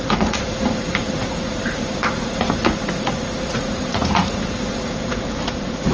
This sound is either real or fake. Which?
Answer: fake